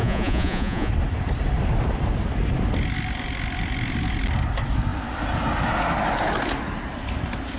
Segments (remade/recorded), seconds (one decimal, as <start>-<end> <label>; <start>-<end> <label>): 0.0-0.9 remade; 0.9-7.6 recorded